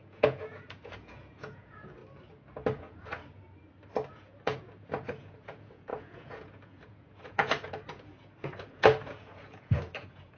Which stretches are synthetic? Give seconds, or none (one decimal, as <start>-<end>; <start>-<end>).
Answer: 0.0-2.0; 2.8-3.2; 4.1-10.4